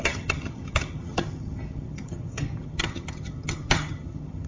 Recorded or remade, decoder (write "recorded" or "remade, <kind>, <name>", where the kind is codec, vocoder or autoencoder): remade, vocoder, HiFi-GAN